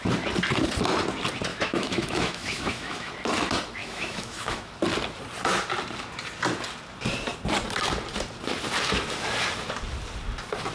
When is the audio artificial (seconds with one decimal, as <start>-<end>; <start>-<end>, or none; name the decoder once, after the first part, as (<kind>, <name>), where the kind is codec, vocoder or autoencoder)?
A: 1.5-3.1 (autoencoder, DAC-VAE); 3.8-4.7